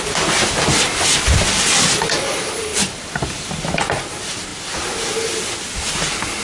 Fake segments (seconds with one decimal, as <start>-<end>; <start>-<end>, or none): none